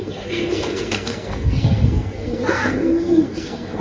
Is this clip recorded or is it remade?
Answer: remade